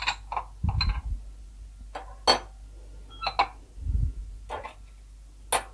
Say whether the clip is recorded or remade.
recorded